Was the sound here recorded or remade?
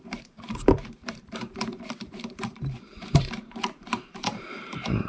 remade